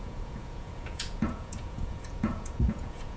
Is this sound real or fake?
fake